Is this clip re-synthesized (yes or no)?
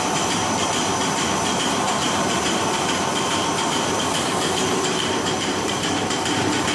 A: yes